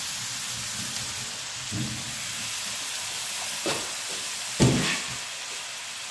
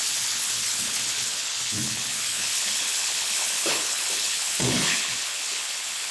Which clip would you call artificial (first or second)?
second